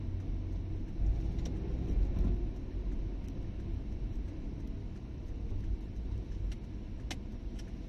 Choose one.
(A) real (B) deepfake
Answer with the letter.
A